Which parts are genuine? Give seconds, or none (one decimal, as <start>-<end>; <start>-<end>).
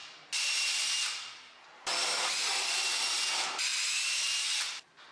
0.0-5.1